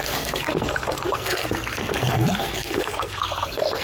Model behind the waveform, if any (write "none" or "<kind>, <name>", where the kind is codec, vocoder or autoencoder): codec, SNAC